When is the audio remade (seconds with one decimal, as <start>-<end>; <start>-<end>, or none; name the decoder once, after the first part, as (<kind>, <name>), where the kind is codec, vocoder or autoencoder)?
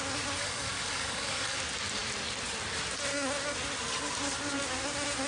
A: 0.4-1.6 (codec, DAC)